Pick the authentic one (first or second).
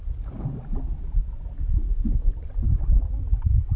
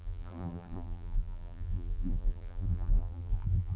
first